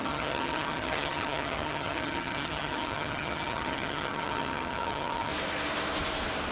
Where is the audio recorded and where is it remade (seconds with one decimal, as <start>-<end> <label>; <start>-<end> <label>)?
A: 0.0-5.3 remade; 5.3-6.5 recorded